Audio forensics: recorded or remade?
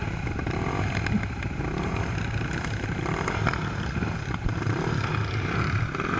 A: recorded